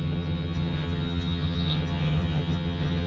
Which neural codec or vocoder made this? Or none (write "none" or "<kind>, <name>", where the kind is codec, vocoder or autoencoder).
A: vocoder, HiFi-GAN